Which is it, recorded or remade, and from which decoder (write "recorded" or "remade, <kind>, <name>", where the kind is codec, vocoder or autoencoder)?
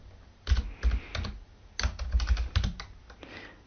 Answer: recorded